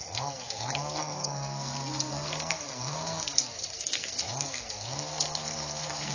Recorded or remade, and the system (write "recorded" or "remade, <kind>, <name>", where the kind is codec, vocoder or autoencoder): remade, codec, SNAC